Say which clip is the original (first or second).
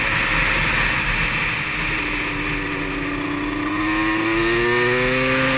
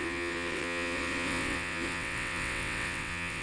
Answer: first